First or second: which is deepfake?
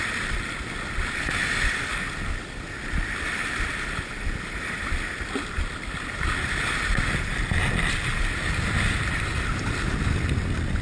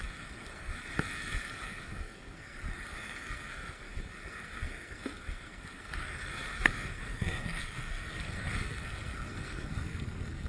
second